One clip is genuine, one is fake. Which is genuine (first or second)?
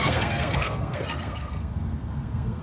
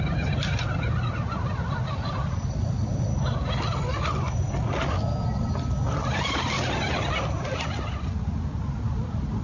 second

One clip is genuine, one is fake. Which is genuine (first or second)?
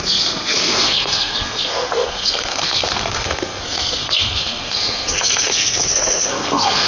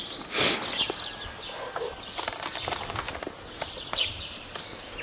second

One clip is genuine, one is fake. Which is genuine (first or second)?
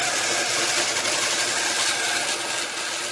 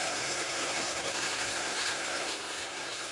first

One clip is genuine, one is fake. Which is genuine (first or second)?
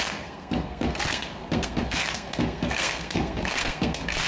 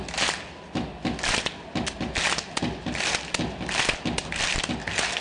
second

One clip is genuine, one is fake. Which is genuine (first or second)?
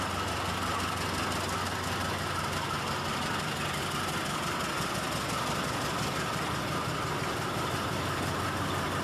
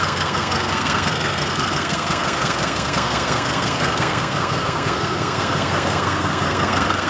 first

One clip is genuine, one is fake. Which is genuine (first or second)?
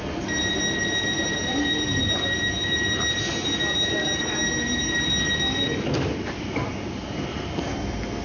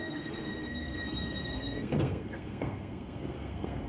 first